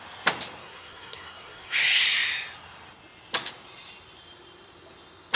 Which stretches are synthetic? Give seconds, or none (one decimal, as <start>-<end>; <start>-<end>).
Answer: 0.6-2.0